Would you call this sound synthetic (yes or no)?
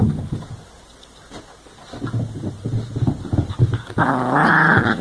no